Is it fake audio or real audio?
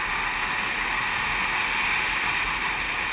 real